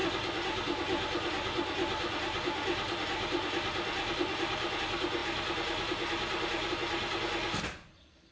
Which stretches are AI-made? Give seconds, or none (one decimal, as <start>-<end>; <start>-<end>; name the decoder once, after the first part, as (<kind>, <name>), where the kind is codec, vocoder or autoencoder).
none

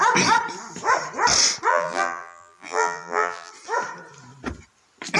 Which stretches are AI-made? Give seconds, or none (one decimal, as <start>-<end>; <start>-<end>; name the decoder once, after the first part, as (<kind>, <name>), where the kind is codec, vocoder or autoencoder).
1.7-3.5 (vocoder, BigVGAN v2)

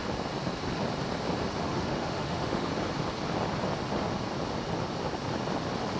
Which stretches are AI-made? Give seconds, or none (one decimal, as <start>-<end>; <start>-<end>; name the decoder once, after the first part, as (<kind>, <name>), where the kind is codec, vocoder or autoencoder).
1.6-2.7 (autoencoder, DAC-VAE)

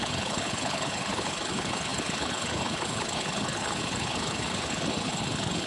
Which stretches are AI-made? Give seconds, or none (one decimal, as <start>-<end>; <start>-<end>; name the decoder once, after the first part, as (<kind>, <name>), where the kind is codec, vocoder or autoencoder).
0.0-5.7 (codec, HILCodec)

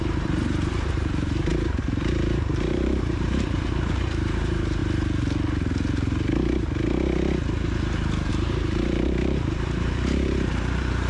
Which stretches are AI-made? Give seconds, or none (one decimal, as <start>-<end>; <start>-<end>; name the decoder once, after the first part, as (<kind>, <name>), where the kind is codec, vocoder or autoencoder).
0.0-4.8 (vocoder, BigVGAN v2); 8.3-11.1

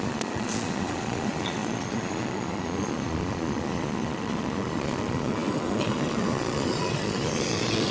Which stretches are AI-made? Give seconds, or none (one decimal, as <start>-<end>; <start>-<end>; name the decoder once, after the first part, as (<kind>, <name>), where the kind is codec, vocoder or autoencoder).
0.0-7.9 (vocoder, Vocos)